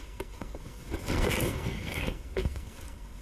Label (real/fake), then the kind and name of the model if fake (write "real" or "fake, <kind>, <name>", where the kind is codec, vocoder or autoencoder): fake, codec, SNAC